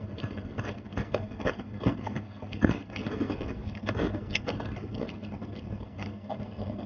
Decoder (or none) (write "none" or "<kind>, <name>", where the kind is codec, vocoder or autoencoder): codec, SNAC